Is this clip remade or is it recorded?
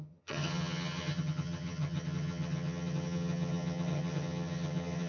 remade